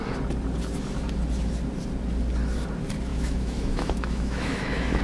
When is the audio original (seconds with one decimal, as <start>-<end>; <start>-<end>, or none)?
0.0-3.1